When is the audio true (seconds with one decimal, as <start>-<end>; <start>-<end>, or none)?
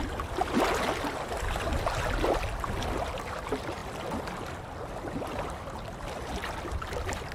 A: 0.0-7.3